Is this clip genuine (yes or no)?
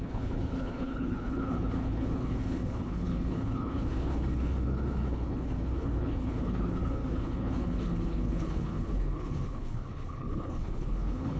no